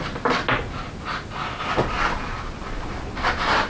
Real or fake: real